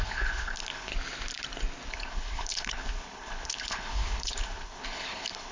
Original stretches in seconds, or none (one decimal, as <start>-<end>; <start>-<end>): 0.9-1.9